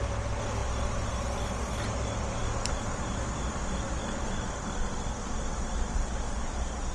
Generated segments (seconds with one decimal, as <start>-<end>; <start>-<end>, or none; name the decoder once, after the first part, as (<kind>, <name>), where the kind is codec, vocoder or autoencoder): none